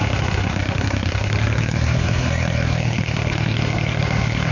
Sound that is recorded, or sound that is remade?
remade